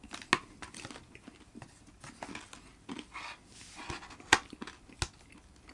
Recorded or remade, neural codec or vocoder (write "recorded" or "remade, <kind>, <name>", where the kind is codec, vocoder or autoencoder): recorded